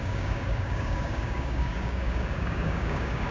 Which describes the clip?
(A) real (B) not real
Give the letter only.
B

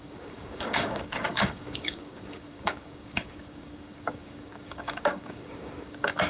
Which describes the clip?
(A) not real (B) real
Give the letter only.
A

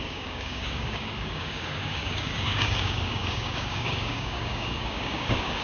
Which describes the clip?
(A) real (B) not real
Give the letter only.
B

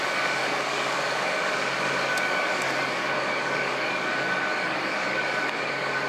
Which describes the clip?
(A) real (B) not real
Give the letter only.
B